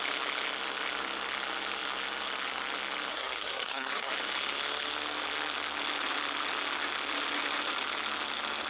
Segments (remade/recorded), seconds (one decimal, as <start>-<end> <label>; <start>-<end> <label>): 0.0-3.1 recorded; 3.1-4.1 remade; 4.1-8.7 recorded